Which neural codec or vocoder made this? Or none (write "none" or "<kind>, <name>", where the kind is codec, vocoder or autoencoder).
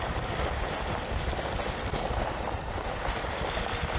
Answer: none